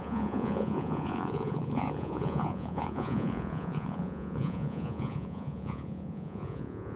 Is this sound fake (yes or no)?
yes